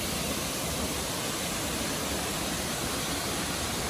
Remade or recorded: remade